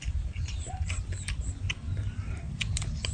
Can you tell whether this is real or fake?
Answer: real